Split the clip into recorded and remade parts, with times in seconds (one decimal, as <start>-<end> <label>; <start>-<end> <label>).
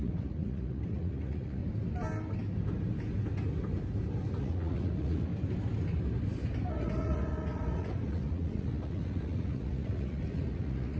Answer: 0.0-1.6 remade; 1.6-4.4 recorded; 4.4-5.3 remade; 5.3-6.7 recorded; 6.7-11.0 remade